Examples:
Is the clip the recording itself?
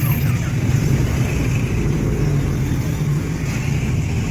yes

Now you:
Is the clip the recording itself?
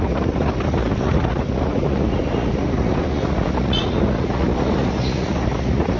no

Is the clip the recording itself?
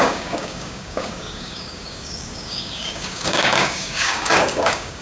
no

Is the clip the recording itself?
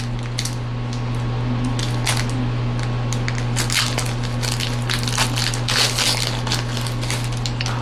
yes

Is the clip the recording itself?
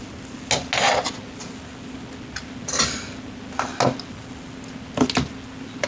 yes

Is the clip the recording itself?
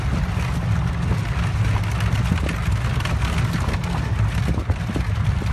yes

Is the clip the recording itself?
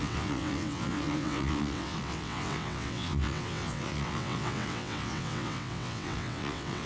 no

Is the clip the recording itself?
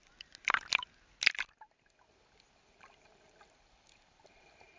yes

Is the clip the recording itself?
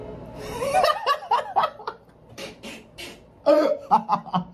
yes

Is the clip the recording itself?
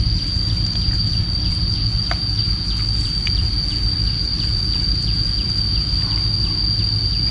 yes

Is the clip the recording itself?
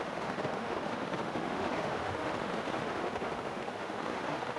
no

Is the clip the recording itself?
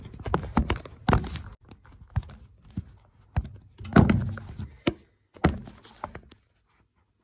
yes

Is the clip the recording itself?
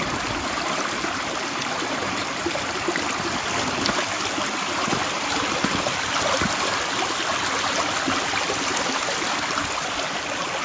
yes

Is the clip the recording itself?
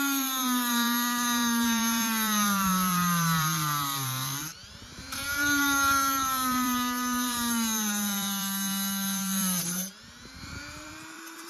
no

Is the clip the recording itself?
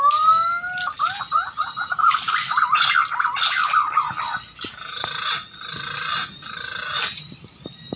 yes